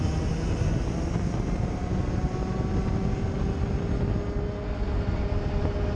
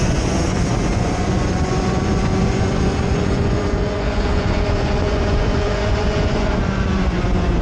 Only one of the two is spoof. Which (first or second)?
second